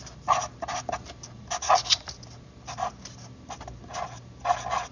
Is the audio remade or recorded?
recorded